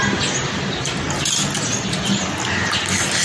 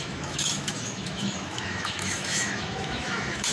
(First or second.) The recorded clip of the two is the first